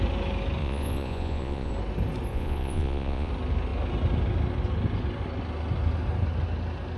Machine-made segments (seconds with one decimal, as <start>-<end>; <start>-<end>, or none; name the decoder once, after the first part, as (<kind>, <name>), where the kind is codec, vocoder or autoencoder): 0.6-1.7 (vocoder, Vocos); 2.3-3.3